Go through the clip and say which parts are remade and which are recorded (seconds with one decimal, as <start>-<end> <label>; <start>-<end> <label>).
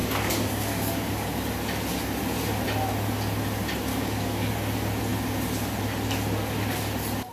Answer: 0.0-1.4 remade; 1.4-3.9 recorded; 3.9-4.5 remade; 4.5-7.3 recorded